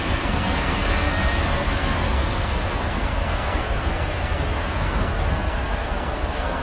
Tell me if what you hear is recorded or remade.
remade